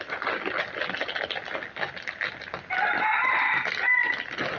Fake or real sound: real